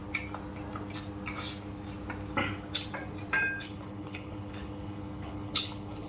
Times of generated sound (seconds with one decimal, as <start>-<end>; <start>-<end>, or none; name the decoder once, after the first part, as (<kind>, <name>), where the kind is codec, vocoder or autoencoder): 3.6-6.1 (codec, HILCodec)